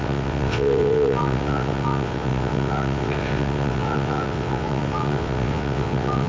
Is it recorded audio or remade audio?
remade